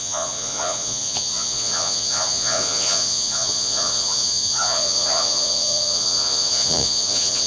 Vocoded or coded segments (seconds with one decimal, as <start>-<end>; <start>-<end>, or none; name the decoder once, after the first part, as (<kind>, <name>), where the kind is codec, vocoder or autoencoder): 0.0-7.5 (vocoder, Vocos)